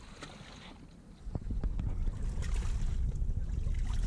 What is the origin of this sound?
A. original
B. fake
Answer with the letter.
A